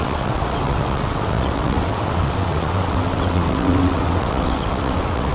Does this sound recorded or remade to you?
remade